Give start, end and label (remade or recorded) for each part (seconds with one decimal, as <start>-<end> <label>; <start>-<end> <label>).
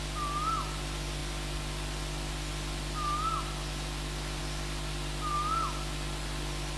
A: 0.0-6.8 recorded